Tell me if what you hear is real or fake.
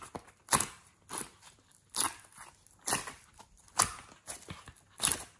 real